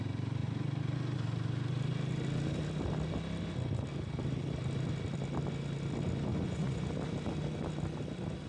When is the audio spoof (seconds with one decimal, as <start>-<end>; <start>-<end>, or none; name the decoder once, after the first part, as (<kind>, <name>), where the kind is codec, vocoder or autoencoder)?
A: 6.3-6.8 (vocoder, Vocos)